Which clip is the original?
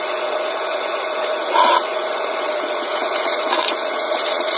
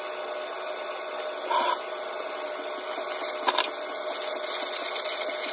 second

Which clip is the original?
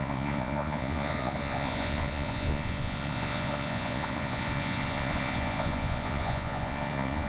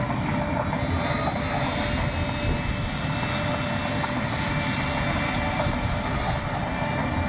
second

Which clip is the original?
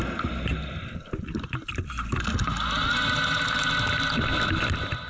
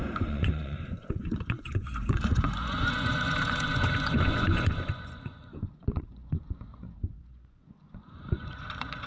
first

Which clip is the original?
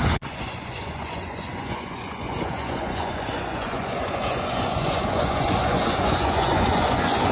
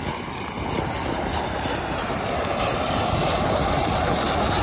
second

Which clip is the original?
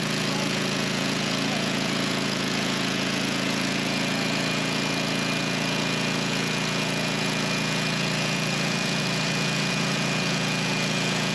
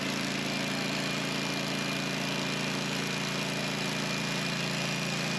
second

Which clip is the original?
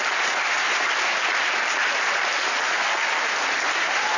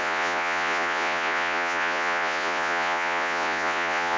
first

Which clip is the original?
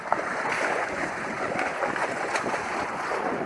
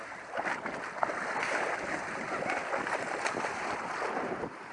second